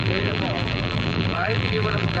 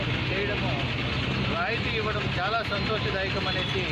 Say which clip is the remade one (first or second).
first